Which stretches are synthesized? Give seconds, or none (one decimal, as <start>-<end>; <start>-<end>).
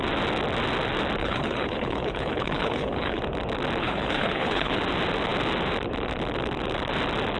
1.2-3.2; 3.8-4.8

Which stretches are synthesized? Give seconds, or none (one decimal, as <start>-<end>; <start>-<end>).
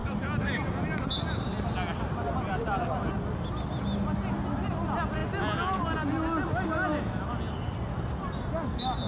none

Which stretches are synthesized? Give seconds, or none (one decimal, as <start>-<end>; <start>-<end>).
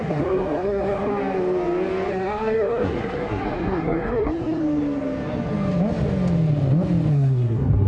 0.0-1.1; 2.1-4.6; 7.1-7.9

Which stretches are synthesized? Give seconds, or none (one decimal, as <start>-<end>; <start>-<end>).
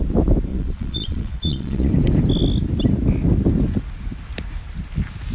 0.5-1.9